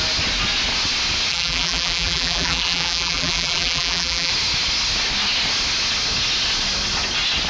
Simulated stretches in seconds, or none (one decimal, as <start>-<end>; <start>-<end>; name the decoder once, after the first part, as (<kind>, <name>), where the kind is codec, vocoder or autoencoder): 1.3-4.3 (vocoder, BigVGAN v2)